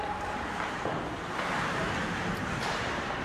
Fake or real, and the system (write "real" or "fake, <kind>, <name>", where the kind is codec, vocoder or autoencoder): fake, vocoder, BigVGAN v2